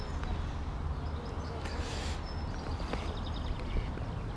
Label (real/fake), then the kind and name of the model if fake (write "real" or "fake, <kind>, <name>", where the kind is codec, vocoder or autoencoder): real